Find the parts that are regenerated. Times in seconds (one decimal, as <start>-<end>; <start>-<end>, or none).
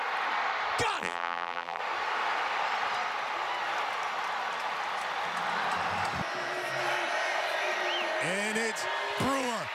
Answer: 1.0-1.8